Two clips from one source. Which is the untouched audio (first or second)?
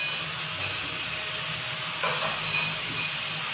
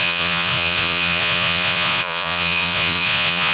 first